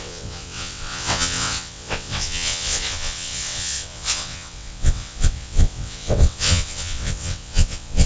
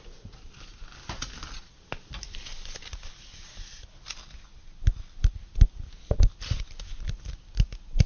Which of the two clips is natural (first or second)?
second